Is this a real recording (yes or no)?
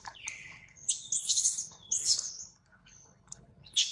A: no